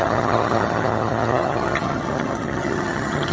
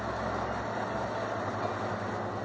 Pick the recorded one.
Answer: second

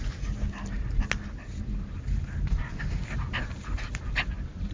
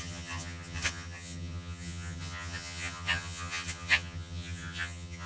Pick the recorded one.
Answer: first